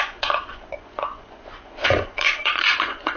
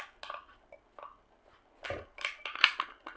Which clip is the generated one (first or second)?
first